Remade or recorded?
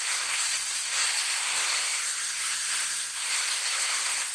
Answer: remade